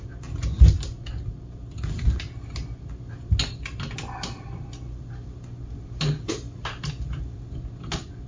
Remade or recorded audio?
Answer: recorded